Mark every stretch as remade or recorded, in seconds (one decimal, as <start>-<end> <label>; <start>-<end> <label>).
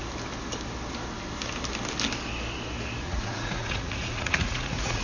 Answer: 0.0-3.0 recorded; 3.0-5.0 remade